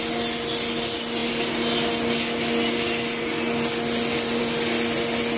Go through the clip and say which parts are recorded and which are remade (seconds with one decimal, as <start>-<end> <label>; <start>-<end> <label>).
0.0-5.4 recorded